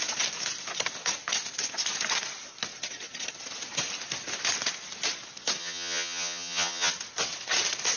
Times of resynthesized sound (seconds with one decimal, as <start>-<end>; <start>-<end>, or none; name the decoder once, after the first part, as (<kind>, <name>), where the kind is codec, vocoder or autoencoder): 5.6-6.9 (vocoder, HiFi-GAN)